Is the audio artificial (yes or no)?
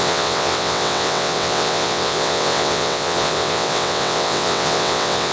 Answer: yes